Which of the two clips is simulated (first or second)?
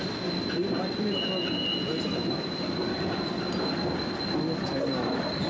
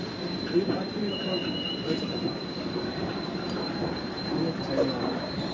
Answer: second